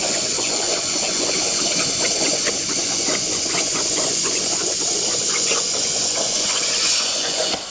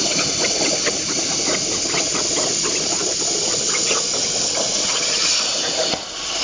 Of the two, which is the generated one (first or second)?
first